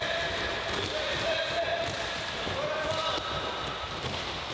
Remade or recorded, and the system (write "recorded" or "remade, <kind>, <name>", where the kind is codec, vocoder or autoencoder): recorded